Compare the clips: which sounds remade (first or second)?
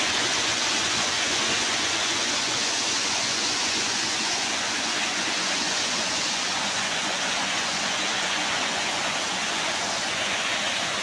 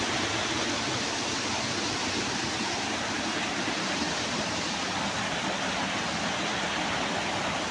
first